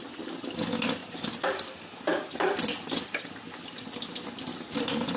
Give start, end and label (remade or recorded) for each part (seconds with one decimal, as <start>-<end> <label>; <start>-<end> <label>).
0.0-1.0 recorded; 1.0-3.4 remade; 3.4-4.5 recorded; 4.5-5.2 remade